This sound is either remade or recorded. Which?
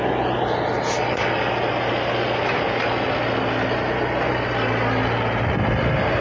recorded